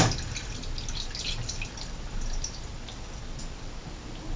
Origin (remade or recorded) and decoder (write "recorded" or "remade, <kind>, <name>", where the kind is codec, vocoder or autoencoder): recorded